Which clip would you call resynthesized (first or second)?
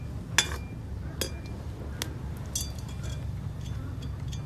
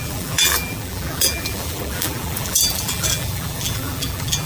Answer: second